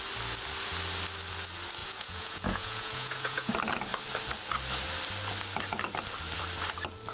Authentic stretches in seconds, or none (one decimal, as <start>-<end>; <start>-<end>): 0.0-1.8; 3.5-7.1